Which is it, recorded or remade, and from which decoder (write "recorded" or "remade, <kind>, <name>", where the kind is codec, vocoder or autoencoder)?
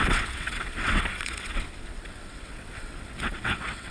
remade, vocoder, WaveNeXt